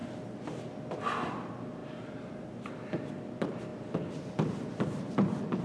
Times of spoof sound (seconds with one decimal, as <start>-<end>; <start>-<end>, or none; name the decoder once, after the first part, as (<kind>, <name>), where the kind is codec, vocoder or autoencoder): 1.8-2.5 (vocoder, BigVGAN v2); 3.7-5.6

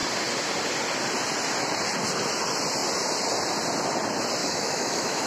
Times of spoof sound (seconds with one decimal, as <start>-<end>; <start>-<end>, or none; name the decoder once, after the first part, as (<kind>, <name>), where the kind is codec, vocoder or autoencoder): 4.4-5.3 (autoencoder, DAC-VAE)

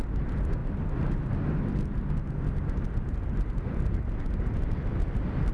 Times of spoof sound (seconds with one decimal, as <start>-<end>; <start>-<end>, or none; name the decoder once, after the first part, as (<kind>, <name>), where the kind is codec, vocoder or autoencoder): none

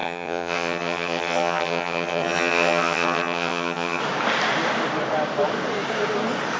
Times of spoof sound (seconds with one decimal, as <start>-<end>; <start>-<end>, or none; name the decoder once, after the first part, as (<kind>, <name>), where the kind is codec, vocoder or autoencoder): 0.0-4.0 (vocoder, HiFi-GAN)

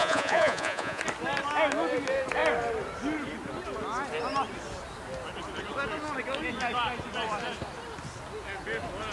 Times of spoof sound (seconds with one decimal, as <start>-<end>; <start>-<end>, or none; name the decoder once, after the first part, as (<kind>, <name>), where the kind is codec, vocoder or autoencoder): 0.0-1.0 (vocoder, Vocos)

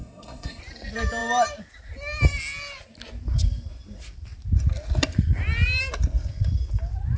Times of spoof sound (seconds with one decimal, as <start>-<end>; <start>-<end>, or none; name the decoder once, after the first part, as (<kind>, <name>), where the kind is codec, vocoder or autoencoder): 0.0-0.6 (codec, SNAC)

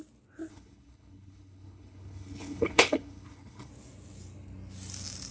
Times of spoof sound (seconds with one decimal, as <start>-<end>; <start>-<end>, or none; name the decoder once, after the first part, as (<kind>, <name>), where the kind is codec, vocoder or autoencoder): 0.5-3.7 (codec, HILCodec)

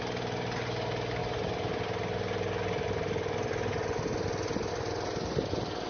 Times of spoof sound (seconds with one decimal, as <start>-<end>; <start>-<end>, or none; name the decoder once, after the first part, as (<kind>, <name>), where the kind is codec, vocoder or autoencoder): none